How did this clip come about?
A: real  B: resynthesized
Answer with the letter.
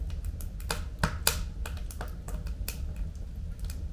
A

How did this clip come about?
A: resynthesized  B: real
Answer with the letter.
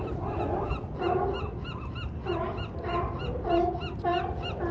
B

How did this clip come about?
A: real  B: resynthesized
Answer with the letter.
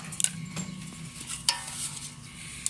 A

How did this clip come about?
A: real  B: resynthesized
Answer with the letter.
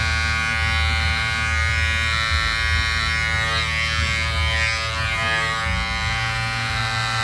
A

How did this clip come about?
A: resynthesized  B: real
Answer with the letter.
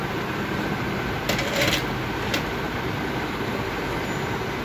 B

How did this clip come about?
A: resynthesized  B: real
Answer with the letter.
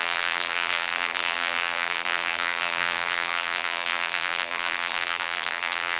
A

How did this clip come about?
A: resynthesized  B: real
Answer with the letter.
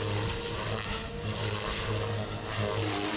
B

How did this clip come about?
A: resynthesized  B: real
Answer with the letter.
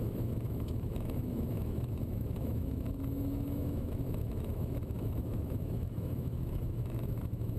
A